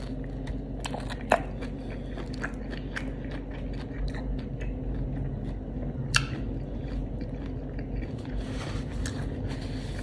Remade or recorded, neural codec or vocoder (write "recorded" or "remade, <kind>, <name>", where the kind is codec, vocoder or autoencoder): recorded